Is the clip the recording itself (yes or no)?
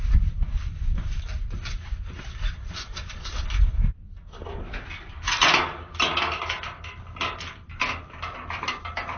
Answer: yes